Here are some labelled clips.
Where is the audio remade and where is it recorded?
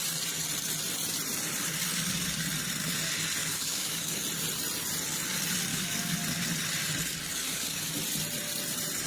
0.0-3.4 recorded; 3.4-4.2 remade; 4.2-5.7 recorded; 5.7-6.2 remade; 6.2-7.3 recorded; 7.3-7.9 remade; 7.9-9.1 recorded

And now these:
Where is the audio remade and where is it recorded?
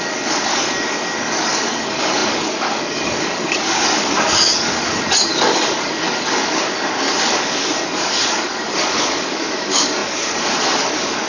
0.0-11.3 remade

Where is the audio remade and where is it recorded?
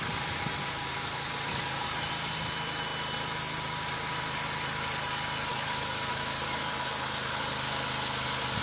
0.0-0.6 recorded; 0.6-2.1 remade; 2.1-5.5 recorded; 5.5-7.4 remade; 7.4-8.6 recorded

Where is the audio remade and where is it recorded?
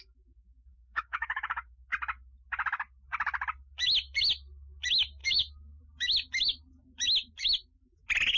0.0-0.7 recorded; 0.7-1.7 remade; 1.7-5.2 recorded; 5.2-5.8 remade; 5.8-8.4 recorded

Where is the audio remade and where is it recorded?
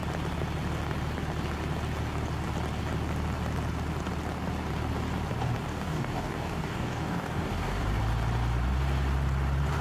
0.0-5.7 recorded; 5.7-8.0 remade; 8.0-9.8 recorded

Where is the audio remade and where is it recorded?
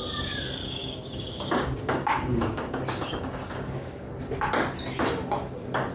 0.0-0.6 recorded; 0.6-4.1 remade; 4.1-5.9 recorded